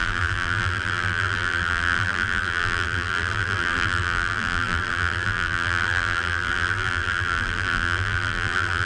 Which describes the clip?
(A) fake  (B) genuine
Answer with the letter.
A